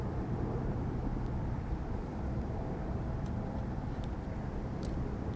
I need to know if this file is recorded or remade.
remade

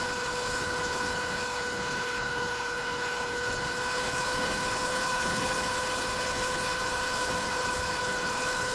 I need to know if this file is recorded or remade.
remade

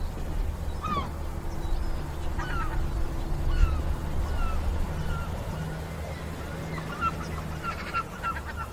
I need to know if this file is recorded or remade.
recorded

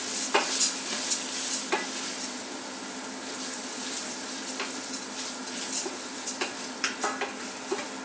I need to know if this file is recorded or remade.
recorded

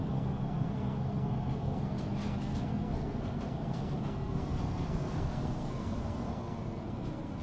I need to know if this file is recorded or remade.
remade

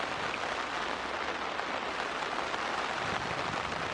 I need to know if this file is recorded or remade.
recorded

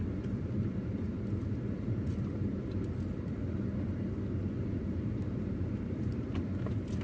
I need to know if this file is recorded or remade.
remade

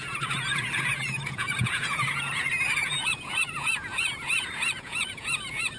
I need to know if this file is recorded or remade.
remade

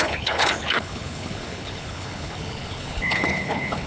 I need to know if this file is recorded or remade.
remade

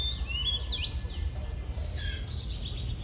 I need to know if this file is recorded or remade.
recorded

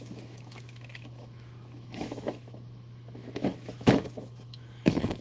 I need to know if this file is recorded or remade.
remade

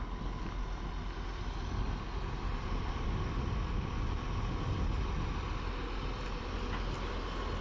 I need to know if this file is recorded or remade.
recorded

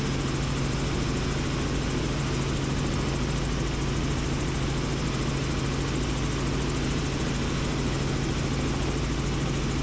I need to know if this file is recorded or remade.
recorded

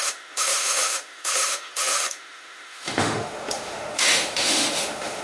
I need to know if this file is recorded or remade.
remade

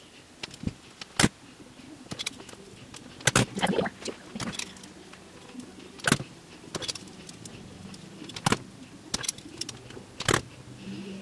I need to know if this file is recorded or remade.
recorded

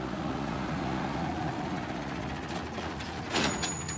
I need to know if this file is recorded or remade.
remade